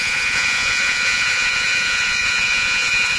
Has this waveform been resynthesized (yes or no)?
yes